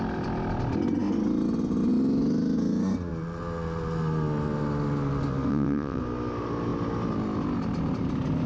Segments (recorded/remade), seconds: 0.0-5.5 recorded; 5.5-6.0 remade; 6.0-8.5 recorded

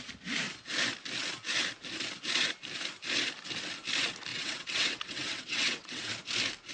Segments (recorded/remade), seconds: 0.0-4.3 recorded; 4.3-6.1 remade; 6.1-6.7 recorded

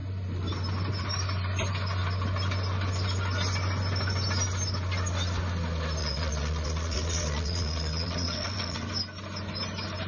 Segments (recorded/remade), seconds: 0.0-6.0 recorded; 6.0-8.9 remade; 8.9-10.1 recorded

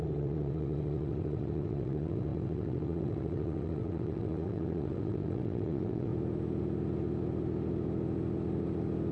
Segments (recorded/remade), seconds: 0.0-6.1 remade; 6.1-9.1 recorded

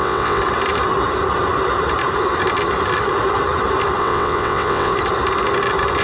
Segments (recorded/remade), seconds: 0.0-0.4 remade; 0.4-4.0 recorded; 4.0-4.9 remade; 4.9-6.0 recorded